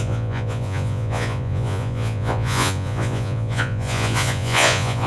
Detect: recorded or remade remade